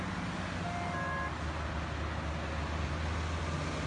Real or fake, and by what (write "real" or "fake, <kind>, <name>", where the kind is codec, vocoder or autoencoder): real